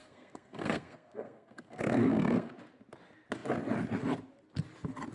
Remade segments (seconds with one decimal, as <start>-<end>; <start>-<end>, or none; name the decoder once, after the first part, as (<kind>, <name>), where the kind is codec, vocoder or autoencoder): 0.0-2.5 (codec, SNAC)